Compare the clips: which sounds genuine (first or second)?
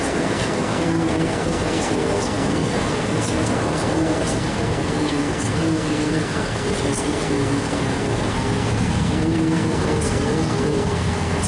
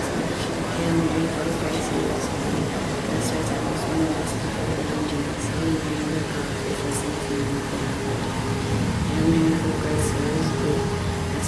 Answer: second